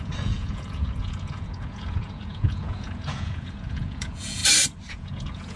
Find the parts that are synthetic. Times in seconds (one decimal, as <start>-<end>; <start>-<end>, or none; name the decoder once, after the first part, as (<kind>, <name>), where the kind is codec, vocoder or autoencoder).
0.0-4.4 (vocoder, Vocos); 4.9-5.6